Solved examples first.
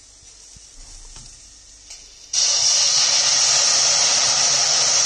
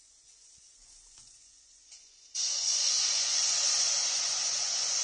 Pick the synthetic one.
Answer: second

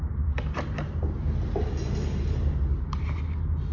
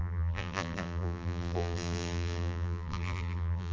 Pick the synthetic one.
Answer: second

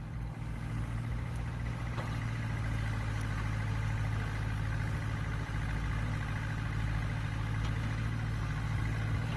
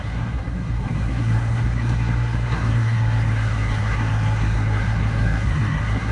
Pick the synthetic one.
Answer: second